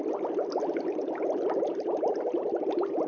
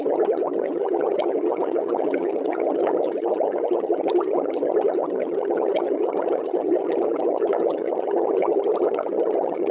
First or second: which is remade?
second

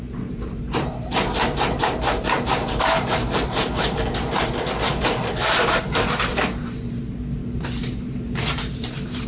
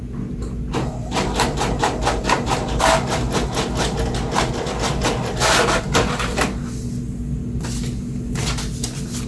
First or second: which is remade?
first